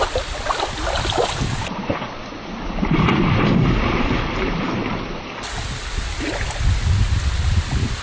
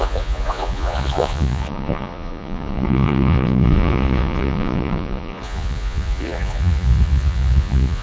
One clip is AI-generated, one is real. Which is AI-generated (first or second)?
second